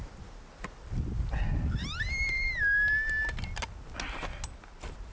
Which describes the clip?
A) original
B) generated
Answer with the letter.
A